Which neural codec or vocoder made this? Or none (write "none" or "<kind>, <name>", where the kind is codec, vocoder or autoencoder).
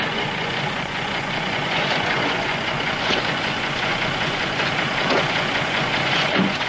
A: vocoder, Vocos